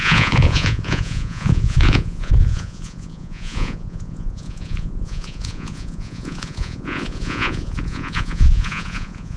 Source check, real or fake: fake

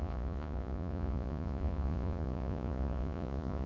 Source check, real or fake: fake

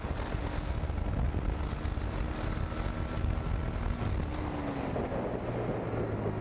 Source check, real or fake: real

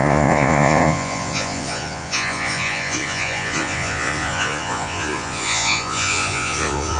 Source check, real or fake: fake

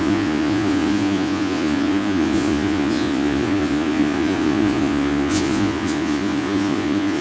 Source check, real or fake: fake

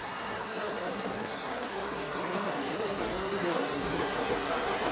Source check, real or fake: fake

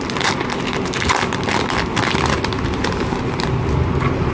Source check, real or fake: real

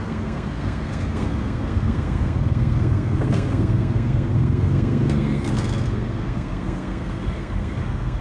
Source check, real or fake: fake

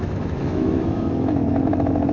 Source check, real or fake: fake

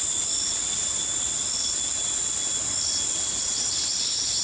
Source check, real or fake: real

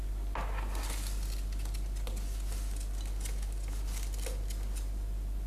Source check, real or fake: real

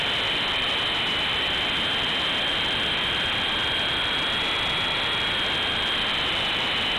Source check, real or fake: fake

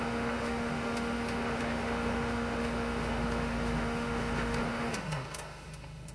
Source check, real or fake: fake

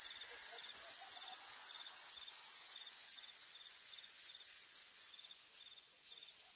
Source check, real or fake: fake